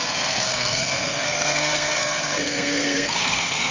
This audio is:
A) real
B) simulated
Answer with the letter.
B